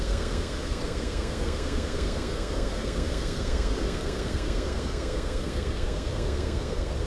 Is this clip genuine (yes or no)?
no